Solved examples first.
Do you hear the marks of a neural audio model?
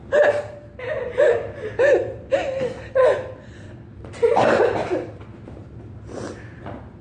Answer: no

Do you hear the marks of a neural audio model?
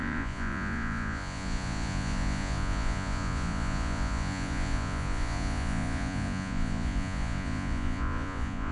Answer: yes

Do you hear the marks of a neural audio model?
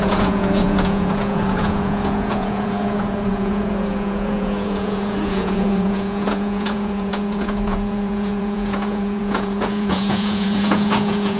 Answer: yes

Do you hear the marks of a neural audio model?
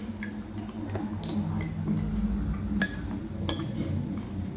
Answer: no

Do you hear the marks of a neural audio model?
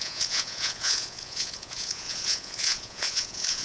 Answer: yes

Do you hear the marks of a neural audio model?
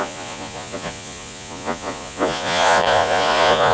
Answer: yes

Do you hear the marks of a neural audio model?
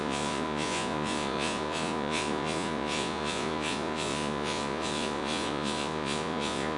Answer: yes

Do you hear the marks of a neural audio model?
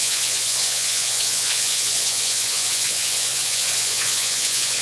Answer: yes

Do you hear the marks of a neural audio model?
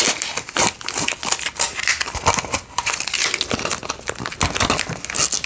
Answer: no